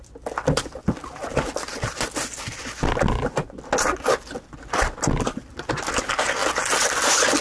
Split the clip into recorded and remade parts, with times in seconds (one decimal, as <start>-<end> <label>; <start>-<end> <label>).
0.0-7.4 recorded